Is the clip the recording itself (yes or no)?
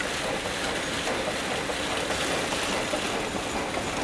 yes